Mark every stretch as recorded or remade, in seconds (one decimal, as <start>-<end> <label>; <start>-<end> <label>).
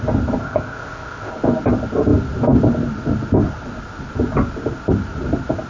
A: 0.0-0.4 recorded; 0.4-1.3 remade; 1.3-5.7 recorded